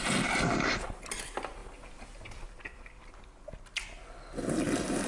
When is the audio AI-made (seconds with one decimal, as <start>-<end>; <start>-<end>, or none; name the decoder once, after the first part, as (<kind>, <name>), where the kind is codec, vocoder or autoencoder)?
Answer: none

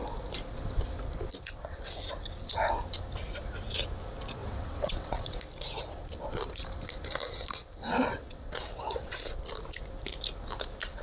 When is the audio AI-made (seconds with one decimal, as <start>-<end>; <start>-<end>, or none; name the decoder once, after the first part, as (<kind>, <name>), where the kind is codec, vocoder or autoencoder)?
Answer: 4.4-5.4 (vocoder, WaveNeXt); 8.2-9.2